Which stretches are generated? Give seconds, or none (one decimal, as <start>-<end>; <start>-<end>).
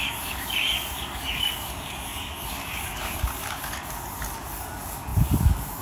0.0-5.8